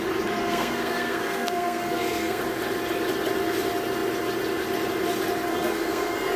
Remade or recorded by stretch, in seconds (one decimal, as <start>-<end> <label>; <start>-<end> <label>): 0.0-0.4 recorded; 0.4-2.4 remade; 2.4-5.5 recorded; 5.5-6.4 remade